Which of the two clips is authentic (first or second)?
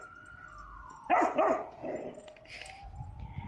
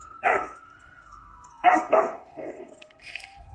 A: first